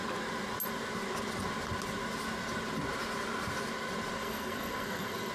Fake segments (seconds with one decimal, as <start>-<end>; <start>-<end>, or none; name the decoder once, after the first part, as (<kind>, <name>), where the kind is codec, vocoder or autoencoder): 4.2-5.3 (codec, SNAC)